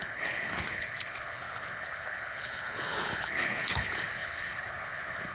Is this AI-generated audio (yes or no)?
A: yes